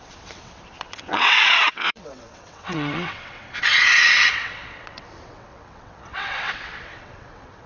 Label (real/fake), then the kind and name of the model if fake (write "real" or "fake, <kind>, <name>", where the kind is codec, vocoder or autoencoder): fake, vocoder, WaveNeXt